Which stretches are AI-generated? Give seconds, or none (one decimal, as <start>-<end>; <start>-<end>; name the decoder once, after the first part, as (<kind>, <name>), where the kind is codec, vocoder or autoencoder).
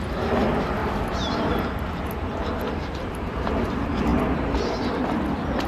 none